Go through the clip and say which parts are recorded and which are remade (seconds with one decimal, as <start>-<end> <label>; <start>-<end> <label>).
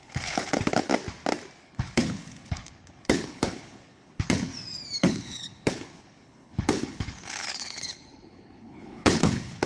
0.0-0.9 remade; 0.9-1.6 recorded; 1.6-4.5 remade; 4.5-5.0 recorded; 5.0-9.7 remade